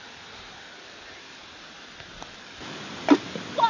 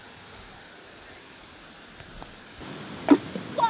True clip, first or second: second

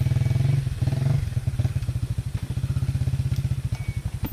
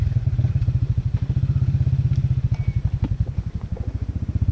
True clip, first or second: first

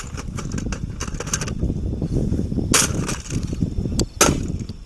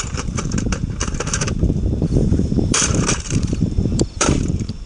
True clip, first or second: first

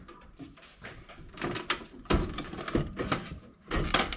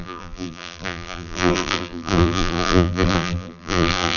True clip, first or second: first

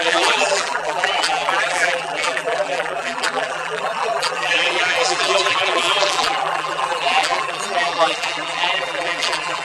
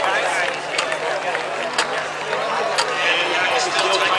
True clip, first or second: second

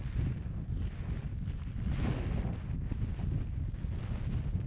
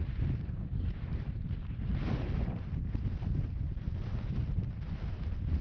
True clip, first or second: first